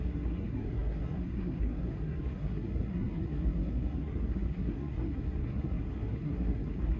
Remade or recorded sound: remade